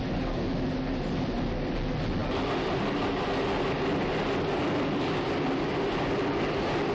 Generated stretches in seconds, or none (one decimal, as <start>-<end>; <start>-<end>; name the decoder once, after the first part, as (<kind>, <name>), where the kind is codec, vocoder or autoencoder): none